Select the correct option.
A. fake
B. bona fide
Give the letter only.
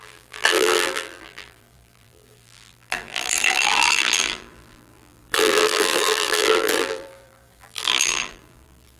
A